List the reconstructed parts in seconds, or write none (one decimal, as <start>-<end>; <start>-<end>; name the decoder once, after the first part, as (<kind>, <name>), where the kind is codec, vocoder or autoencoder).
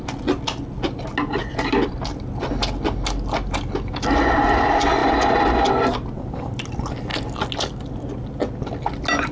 none